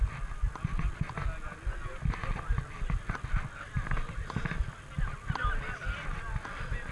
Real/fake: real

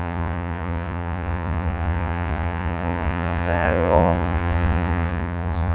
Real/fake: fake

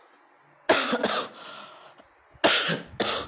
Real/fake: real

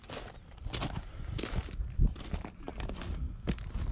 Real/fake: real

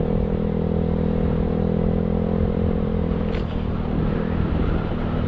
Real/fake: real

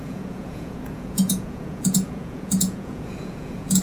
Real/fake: fake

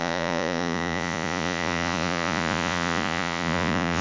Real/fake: fake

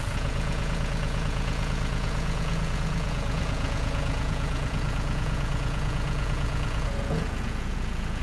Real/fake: fake